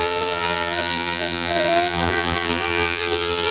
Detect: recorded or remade remade